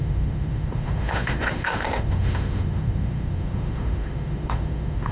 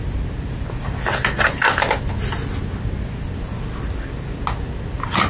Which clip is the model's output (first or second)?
first